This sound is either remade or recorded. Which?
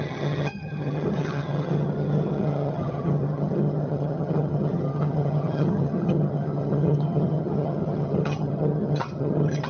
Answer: remade